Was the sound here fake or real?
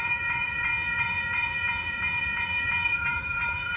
fake